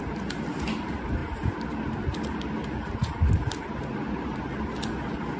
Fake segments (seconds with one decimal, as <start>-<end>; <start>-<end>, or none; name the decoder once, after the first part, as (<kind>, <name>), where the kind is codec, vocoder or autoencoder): none